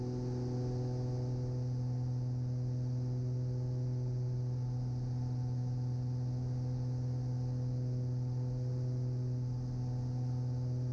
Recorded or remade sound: recorded